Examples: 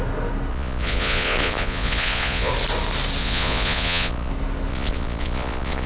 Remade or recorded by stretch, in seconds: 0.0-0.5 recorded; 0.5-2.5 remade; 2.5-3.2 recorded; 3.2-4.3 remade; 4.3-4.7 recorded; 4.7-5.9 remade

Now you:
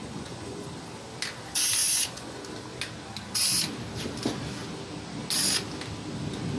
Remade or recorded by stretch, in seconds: 0.0-0.7 remade; 0.7-1.8 recorded; 1.8-2.4 remade; 2.4-6.6 recorded

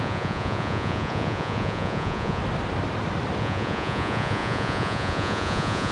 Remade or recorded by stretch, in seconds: 0.0-2.4 remade; 2.4-3.4 recorded; 3.4-5.9 remade

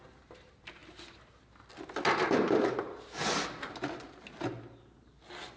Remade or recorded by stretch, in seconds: 0.0-5.6 recorded

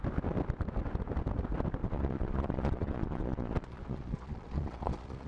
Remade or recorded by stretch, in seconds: 0.0-1.8 recorded; 1.8-5.3 remade